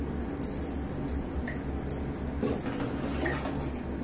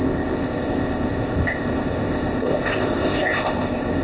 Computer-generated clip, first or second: second